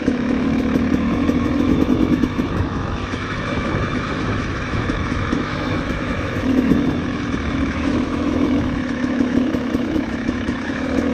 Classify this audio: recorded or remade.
remade